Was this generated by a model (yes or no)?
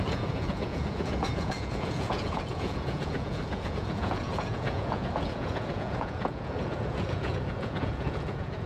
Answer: yes